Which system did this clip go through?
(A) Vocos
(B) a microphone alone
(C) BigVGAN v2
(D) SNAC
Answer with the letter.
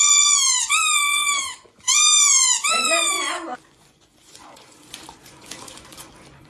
A